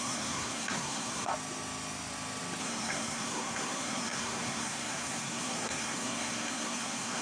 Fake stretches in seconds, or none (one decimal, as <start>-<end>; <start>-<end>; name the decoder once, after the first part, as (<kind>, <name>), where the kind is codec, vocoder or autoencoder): 0.0-1.3 (codec, SNAC); 2.6-7.2